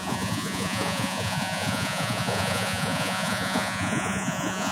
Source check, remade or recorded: remade